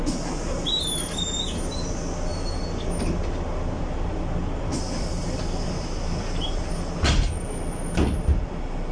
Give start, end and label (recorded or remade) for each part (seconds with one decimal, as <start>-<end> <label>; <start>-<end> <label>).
0.0-8.9 recorded